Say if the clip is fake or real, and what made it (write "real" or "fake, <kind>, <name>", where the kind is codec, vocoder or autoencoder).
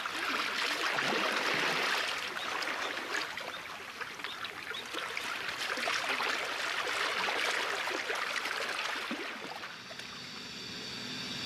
real